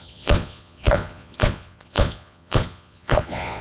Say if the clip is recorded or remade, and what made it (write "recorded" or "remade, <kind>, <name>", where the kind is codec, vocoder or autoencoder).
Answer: remade, vocoder, Vocos